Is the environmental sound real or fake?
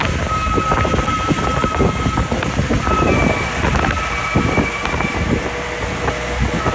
real